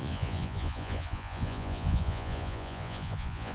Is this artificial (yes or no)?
yes